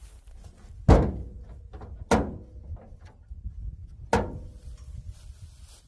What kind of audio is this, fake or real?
real